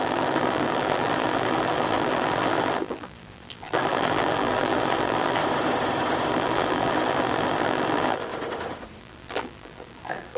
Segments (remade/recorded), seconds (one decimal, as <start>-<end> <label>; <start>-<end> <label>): 0.0-5.4 remade; 5.4-6.3 recorded; 6.3-8.3 remade; 8.3-9.0 recorded; 9.0-10.4 remade